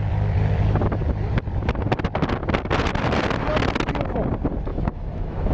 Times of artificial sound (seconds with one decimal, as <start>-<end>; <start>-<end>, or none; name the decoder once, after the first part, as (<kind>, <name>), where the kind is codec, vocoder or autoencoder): 4.7-5.5 (autoencoder, DAC-VAE)